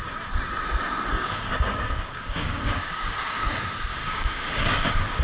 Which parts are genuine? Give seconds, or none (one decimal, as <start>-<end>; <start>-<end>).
0.0-1.1; 3.5-3.9